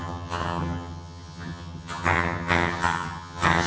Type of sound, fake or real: fake